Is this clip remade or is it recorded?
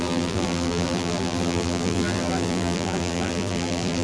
remade